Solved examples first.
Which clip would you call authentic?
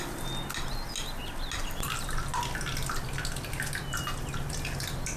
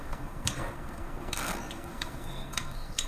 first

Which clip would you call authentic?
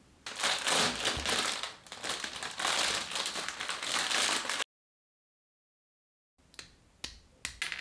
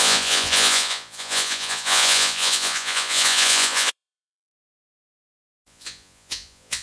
first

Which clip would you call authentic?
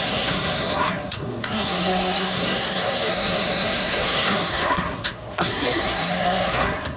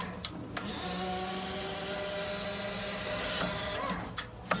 second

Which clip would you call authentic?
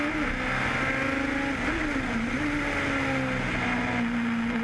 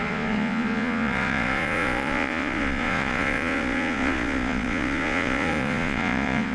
first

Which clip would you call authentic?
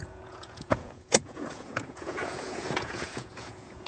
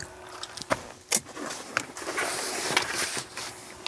second